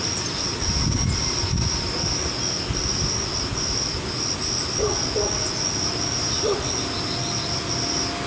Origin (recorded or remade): recorded